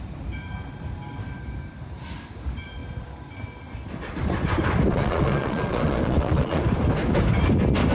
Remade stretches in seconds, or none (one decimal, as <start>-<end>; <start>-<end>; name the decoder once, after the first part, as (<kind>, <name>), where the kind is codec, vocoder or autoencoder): 4.9-6.6 (vocoder, Vocos)